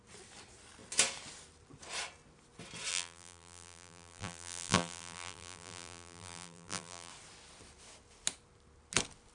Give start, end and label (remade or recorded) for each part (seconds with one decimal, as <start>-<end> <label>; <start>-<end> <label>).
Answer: 0.0-2.9 recorded; 2.9-7.1 remade; 7.1-9.3 recorded